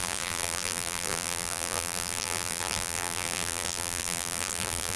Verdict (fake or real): fake